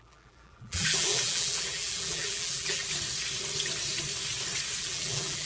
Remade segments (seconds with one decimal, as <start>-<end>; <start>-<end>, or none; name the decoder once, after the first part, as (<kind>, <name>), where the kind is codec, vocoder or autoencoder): 0.0-2.8 (vocoder, BigVGAN v2); 4.8-5.4